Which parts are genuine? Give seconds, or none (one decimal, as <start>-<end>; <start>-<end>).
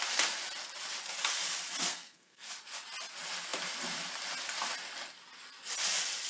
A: 0.0-1.9; 2.5-6.3